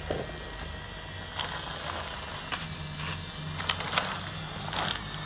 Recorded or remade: recorded